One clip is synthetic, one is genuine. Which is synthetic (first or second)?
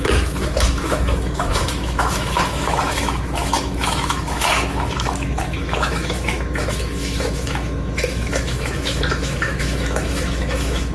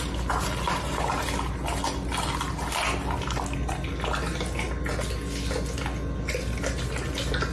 first